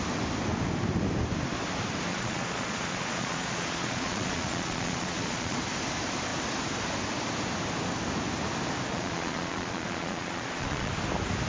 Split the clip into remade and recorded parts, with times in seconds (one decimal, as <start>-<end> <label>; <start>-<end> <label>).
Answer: 0.0-2.1 recorded; 2.1-5.6 remade; 5.6-8.9 recorded; 8.9-10.9 remade; 10.9-11.5 recorded